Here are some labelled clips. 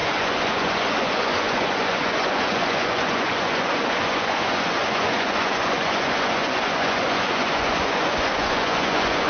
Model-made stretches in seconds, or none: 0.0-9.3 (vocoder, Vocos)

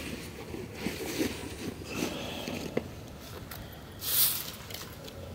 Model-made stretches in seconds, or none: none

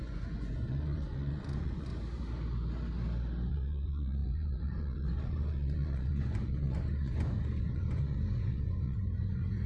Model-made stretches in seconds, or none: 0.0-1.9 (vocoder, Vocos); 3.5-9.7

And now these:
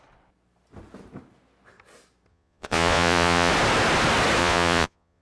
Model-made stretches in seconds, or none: 2.3-3.5 (vocoder, Vocos); 4.4-5.2